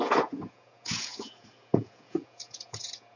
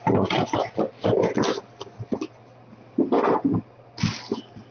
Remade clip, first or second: first